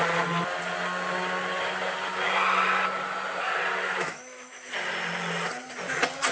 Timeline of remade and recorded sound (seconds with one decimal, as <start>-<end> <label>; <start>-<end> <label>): 0.0-3.8 recorded; 3.8-4.7 remade; 4.7-6.3 recorded